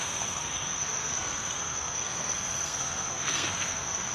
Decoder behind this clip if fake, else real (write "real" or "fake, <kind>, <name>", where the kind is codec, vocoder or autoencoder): fake, codec, SNAC